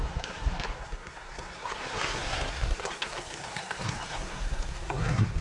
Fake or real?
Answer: fake